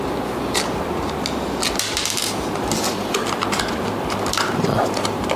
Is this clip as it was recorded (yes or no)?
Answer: yes